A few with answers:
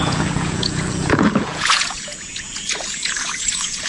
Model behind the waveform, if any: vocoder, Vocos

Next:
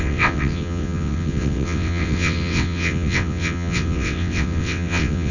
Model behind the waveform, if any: vocoder, WaveNeXt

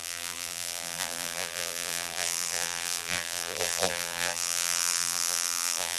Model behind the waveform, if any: vocoder, BigVGAN v2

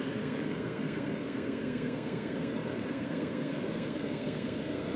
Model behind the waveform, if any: codec, SNAC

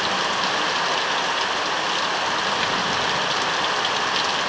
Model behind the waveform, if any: none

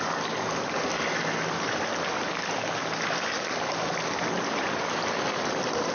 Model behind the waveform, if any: none